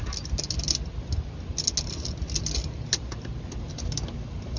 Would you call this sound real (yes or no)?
yes